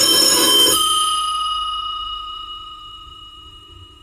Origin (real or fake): fake